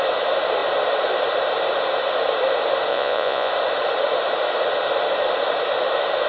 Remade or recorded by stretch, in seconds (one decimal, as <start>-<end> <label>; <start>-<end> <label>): 0.0-2.9 recorded; 2.9-3.5 remade; 3.5-6.3 recorded